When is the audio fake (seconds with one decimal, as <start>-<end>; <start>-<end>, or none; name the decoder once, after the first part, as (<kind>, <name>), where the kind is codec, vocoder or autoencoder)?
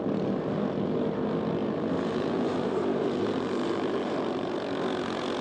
1.6-4.6 (vocoder, BigVGAN v2)